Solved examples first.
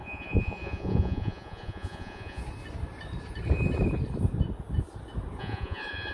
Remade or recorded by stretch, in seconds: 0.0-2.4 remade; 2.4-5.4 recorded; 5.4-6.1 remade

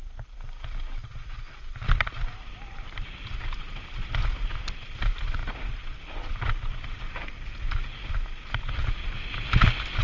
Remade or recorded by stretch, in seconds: 0.0-10.0 recorded